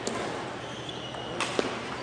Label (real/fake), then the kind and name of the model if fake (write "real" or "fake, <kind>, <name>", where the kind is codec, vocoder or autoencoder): real